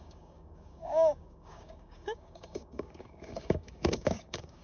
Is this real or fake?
fake